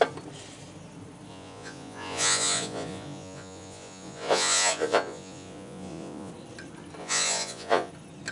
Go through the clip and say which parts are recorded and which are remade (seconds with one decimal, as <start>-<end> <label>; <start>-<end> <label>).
0.0-1.3 recorded; 1.3-6.3 remade; 6.3-7.0 recorded; 7.0-7.9 remade; 7.9-8.3 recorded